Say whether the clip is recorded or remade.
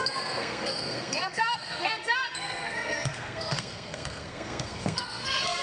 remade